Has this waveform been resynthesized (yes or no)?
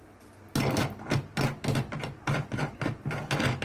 no